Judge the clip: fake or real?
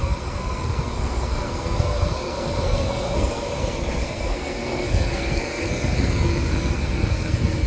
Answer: fake